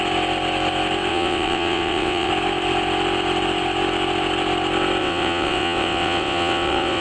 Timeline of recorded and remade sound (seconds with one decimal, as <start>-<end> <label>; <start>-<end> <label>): 0.0-1.1 recorded; 1.1-2.3 remade; 2.3-5.0 recorded; 5.0-7.0 remade